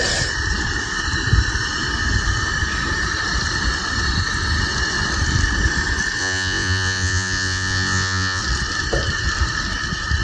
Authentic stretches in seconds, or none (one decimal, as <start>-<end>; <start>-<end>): 0.0-6.2; 8.4-10.2